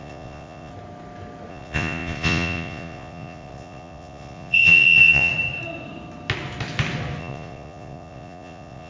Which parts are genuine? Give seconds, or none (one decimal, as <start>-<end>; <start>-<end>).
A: 0.7-1.5; 5.3-7.2